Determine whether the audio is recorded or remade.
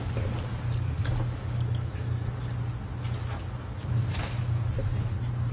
recorded